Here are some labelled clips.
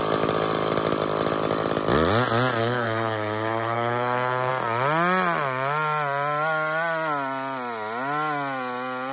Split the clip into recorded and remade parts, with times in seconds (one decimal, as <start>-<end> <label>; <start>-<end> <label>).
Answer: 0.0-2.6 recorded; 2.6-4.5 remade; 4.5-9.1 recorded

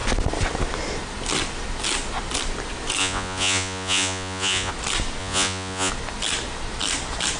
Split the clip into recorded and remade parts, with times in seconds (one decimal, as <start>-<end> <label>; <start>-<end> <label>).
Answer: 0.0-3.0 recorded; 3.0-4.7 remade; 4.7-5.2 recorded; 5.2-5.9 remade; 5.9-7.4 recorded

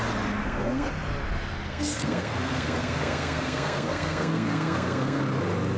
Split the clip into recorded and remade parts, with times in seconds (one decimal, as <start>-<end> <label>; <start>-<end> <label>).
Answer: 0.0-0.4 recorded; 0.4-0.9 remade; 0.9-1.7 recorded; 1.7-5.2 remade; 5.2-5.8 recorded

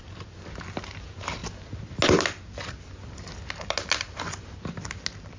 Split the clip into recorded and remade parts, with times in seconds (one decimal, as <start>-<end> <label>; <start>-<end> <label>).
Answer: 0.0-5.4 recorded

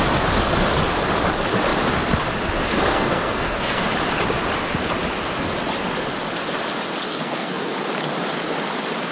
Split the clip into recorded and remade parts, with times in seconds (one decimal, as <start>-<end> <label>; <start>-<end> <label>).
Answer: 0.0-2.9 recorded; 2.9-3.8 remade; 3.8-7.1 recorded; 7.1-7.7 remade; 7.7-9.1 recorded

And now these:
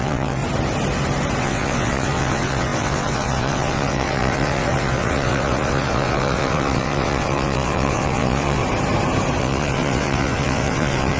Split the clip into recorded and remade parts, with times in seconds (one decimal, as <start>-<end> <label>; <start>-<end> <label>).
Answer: 0.0-0.4 remade; 0.4-1.4 recorded; 1.4-8.6 remade; 8.6-9.4 recorded; 9.4-11.2 remade

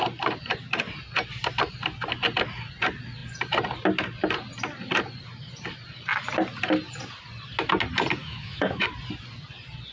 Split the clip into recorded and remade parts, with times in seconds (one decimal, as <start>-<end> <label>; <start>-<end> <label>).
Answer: 0.0-8.2 recorded; 8.2-8.9 remade; 8.9-9.9 recorded

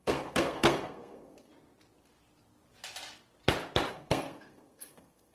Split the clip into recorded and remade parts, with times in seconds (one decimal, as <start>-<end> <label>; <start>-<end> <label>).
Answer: 0.0-1.5 remade; 1.5-3.9 recorded; 3.9-5.3 remade